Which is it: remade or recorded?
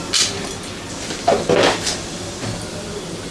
recorded